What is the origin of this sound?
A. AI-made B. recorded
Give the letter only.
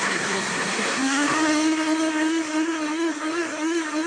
A